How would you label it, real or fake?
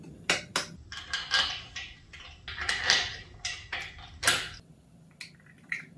real